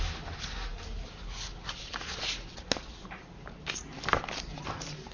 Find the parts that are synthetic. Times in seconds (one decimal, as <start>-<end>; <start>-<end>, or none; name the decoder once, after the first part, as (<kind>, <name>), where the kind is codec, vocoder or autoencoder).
none